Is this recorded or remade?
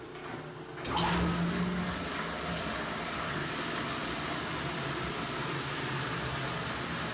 recorded